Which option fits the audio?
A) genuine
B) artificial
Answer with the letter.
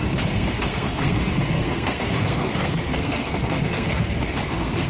B